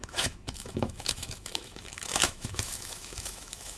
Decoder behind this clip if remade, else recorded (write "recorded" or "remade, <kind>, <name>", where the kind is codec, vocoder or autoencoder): remade, autoencoder, DAC-VAE